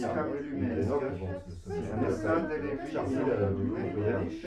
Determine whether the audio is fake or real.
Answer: real